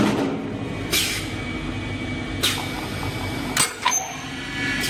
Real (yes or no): yes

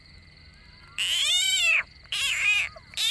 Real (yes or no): no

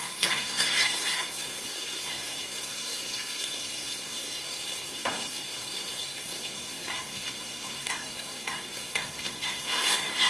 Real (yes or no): no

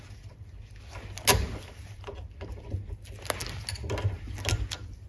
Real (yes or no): yes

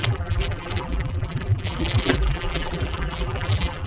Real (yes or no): no